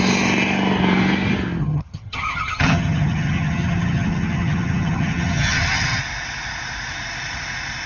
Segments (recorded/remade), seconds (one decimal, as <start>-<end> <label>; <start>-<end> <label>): 0.0-1.6 recorded; 1.6-6.0 remade; 6.0-7.9 recorded